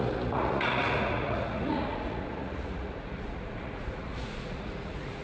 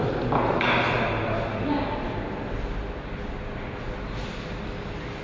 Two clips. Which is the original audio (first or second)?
second